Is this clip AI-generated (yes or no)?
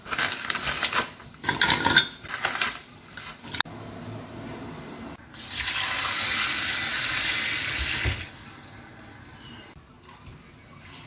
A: no